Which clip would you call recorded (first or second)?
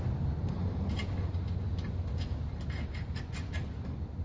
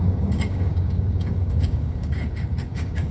first